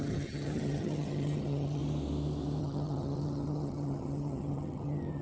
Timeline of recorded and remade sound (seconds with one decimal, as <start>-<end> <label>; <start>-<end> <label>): 0.0-1.8 remade; 1.8-2.6 recorded; 2.6-5.2 remade